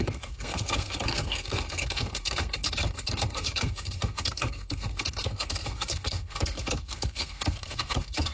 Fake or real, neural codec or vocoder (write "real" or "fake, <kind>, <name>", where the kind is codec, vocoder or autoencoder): fake, codec, SNAC